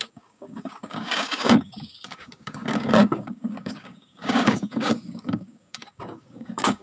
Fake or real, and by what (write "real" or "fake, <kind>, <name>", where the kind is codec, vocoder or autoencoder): fake, codec, DAC